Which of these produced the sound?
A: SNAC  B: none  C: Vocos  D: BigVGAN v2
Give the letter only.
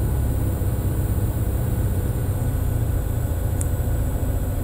D